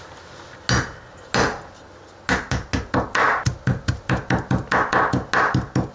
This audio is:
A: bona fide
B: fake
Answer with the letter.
A